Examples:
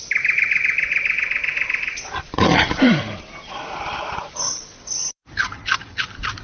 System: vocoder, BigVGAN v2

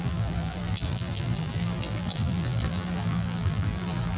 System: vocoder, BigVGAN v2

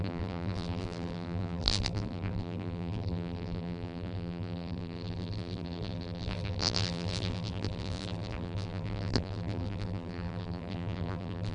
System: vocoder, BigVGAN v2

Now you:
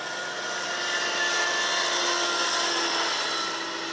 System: none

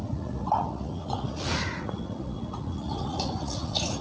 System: vocoder, Vocos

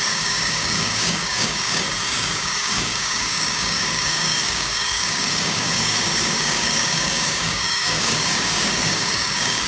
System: codec, DAC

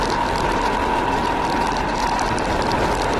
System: none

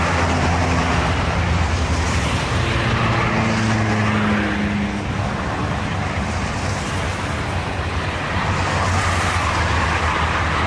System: none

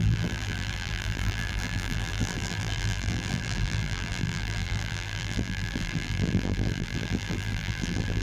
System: vocoder, BigVGAN v2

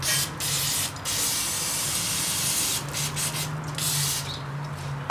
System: none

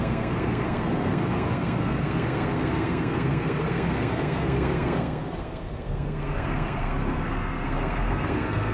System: codec, SNAC